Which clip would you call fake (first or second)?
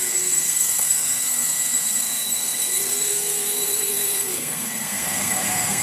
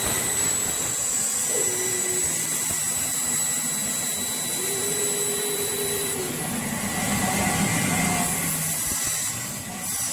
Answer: first